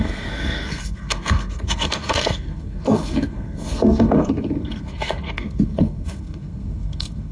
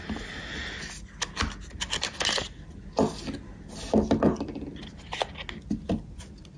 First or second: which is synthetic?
first